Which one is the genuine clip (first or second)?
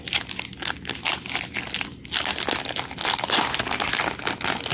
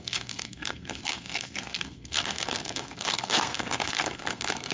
first